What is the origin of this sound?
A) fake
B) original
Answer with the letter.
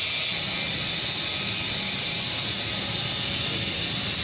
B